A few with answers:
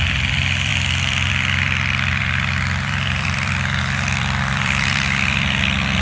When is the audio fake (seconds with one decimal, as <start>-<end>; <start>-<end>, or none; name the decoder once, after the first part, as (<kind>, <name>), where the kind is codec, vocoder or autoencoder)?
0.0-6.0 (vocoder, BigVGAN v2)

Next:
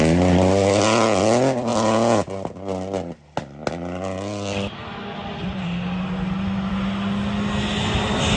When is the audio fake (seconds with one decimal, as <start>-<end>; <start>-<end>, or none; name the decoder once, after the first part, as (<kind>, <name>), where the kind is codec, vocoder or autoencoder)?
none

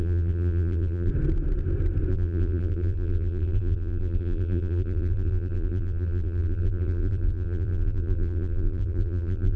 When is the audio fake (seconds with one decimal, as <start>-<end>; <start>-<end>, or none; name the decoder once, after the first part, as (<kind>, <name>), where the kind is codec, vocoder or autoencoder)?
0.0-1.1 (vocoder, BigVGAN v2); 2.1-9.6

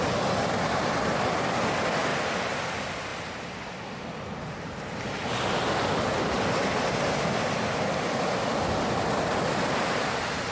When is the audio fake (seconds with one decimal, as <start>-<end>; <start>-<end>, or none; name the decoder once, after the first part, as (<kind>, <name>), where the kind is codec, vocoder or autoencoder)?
2.1-2.6 (vocoder, BigVGAN v2)